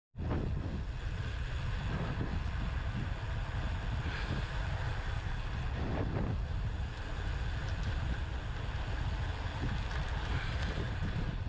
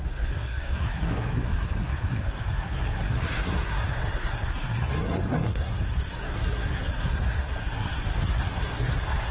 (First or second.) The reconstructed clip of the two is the second